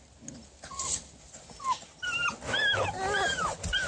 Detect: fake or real real